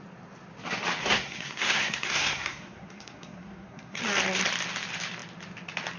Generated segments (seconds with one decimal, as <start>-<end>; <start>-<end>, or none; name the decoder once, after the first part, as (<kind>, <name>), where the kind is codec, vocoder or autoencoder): 1.0-4.0 (codec, SNAC)